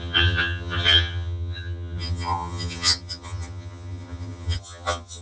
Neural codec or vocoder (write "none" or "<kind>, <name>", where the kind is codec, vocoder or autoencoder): vocoder, HiFi-GAN